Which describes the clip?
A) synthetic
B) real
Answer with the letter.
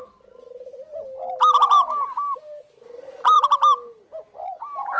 B